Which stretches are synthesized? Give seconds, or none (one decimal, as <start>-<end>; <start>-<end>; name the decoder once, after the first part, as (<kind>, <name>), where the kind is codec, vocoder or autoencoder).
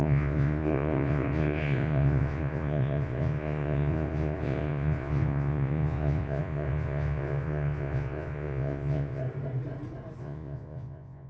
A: 0.0-9.2 (vocoder, Vocos); 10.2-11.3